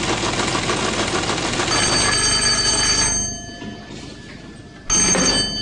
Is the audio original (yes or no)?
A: yes